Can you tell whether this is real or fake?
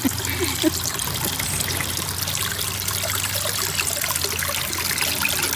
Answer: real